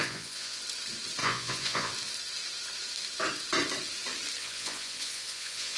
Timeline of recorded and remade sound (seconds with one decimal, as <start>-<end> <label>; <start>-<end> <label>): 0.0-0.6 remade; 0.6-1.2 recorded; 1.2-1.9 remade; 1.9-4.4 recorded; 4.4-5.8 remade